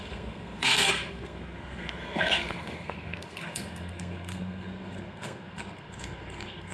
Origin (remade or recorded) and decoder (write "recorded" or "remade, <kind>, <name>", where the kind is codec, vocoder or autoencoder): remade, codec, SNAC